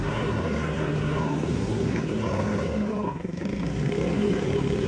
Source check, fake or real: fake